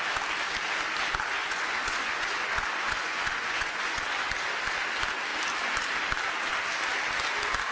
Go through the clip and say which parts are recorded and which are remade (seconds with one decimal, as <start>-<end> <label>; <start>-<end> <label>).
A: 0.0-1.4 recorded; 1.4-4.2 remade; 4.2-7.7 recorded